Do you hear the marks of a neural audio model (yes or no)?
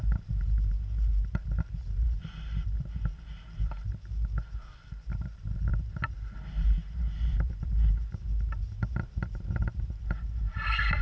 yes